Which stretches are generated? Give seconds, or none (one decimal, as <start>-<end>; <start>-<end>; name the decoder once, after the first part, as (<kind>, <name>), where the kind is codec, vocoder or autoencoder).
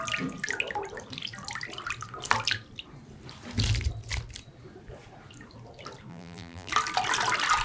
6.1-6.7 (vocoder, BigVGAN v2)